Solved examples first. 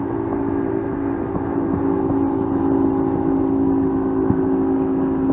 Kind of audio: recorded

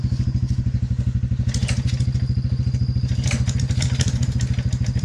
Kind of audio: recorded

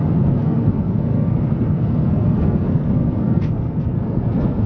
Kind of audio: remade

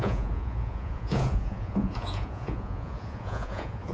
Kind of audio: remade